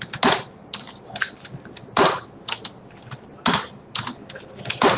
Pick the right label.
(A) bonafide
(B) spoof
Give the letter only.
A